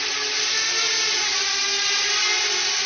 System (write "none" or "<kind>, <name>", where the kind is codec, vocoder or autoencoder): none